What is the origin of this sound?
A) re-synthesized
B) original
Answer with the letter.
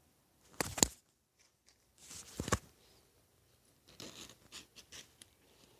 A